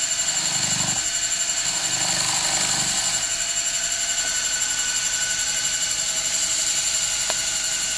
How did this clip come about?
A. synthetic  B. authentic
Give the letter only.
B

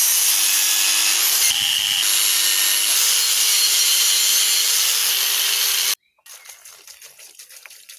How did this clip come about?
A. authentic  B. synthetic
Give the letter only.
A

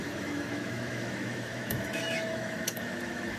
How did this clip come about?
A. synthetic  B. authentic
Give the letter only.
A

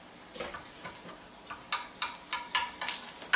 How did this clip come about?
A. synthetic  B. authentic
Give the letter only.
B